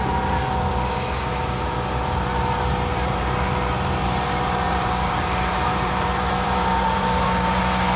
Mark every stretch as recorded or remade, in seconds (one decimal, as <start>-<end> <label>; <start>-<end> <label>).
0.0-2.9 recorded; 2.9-7.6 remade; 7.6-8.0 recorded